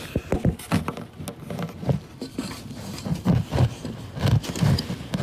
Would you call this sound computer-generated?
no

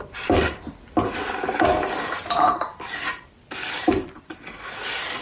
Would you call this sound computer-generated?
yes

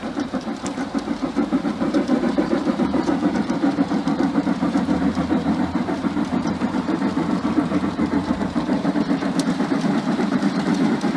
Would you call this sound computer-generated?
yes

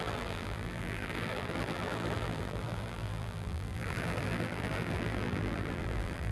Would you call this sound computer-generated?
yes